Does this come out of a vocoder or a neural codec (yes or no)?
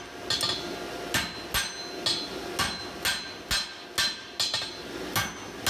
no